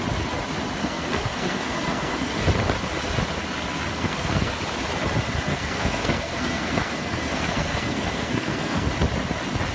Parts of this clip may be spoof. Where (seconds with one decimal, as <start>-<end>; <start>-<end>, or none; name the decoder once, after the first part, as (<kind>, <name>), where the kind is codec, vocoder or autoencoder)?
0.8-2.4 (codec, SNAC); 3.9-4.6; 5.5-8.9